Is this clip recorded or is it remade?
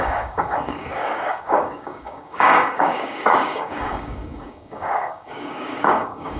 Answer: remade